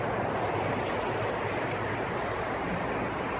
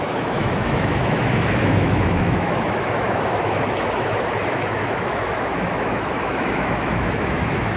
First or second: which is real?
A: first